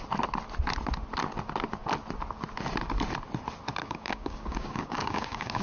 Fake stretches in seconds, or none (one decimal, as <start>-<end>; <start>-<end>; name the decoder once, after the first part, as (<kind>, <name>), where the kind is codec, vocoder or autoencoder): 3.8-5.6 (codec, DAC)

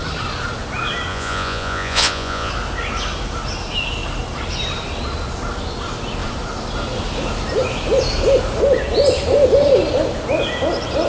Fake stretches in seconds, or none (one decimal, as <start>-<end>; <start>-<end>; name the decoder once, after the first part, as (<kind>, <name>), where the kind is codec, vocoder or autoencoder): 1.1-2.5 (vocoder, Vocos)

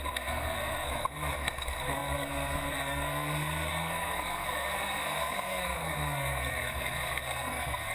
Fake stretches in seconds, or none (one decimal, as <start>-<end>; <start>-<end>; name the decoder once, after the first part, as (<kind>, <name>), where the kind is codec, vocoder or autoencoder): 0.0-7.9 (codec, SNAC)

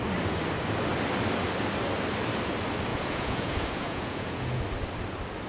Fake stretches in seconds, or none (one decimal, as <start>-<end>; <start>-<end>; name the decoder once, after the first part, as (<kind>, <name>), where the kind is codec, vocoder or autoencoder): 2.9-4.6 (vocoder, Vocos)

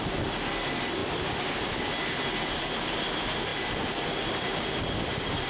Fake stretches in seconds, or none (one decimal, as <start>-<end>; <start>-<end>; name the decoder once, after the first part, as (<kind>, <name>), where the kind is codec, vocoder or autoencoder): none